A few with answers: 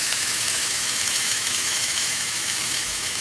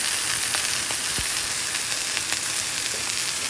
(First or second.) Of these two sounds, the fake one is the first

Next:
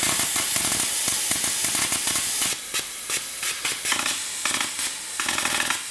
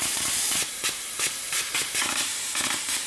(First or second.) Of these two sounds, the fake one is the second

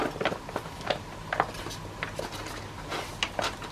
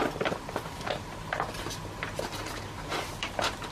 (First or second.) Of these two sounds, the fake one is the second